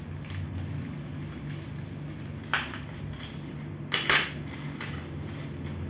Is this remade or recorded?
recorded